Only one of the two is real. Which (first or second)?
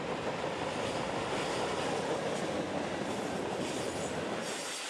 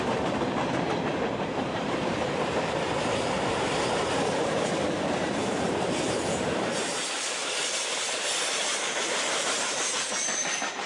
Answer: first